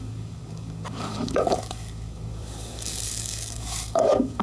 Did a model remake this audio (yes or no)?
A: yes